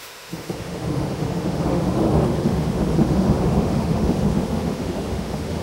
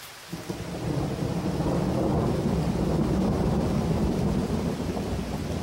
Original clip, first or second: second